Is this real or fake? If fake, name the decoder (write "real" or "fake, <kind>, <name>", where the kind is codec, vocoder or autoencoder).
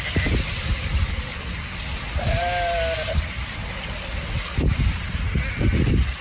real